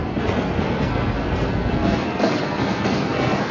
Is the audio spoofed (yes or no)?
yes